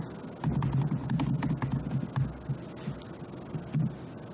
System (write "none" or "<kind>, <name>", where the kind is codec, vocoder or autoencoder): none